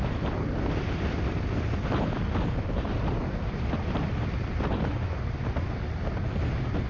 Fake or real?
real